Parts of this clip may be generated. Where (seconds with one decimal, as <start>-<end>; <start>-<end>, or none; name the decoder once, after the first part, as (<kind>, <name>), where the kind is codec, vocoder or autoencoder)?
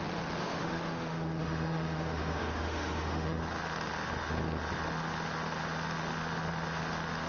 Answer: 0.4-3.4 (autoencoder, DAC-VAE)